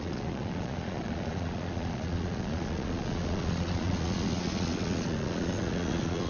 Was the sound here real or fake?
fake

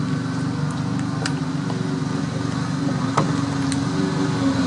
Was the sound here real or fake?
real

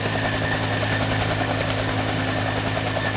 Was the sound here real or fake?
real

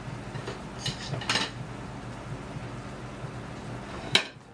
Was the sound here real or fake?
real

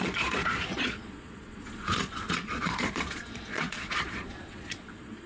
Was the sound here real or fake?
fake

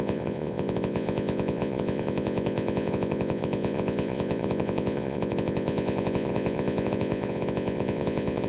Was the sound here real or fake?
fake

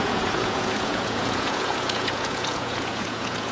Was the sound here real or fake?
fake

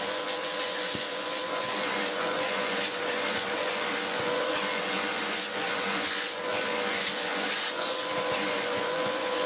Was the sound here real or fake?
fake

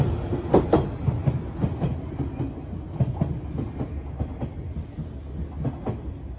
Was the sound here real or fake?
real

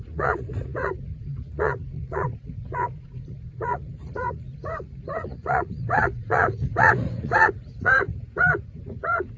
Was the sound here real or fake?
fake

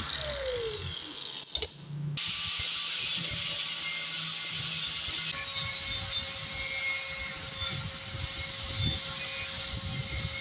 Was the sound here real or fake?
real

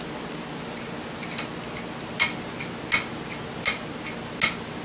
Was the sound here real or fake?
real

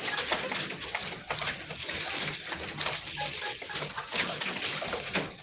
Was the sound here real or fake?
real